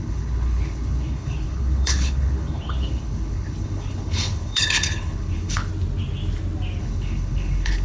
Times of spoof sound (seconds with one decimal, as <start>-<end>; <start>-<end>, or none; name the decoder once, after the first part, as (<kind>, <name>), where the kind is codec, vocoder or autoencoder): 0.0-5.7 (codec, HILCodec); 6.8-7.8